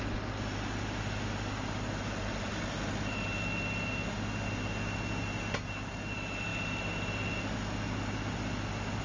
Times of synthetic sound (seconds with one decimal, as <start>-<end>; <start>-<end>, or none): none